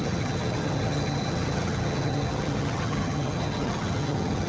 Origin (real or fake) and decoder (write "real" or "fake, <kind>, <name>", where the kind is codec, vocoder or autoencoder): fake, vocoder, HiFi-GAN